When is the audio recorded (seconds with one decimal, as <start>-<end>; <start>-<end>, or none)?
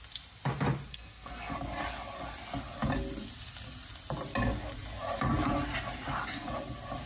0.0-0.9; 1.5-7.1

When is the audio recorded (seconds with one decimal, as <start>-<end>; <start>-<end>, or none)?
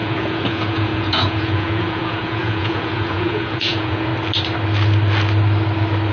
4.1-6.1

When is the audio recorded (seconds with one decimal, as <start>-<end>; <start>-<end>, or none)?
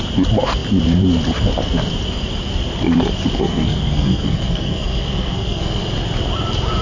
0.0-3.4; 5.8-6.8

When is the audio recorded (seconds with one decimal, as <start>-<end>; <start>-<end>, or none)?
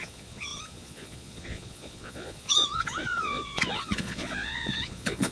none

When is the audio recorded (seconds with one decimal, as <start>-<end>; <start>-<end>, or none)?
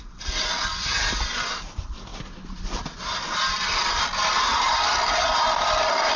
2.1-3.9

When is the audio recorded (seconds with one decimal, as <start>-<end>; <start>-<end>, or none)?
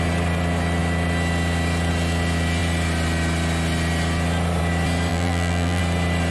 0.0-5.1; 5.8-6.3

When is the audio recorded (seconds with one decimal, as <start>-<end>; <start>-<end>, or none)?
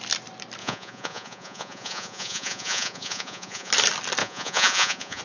0.0-0.6; 3.7-4.2